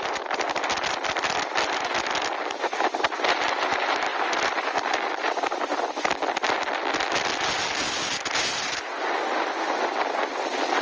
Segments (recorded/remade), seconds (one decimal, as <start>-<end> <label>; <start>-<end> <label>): 0.0-4.1 recorded; 4.1-4.7 remade; 4.7-5.7 recorded; 5.7-6.7 remade; 6.7-10.8 recorded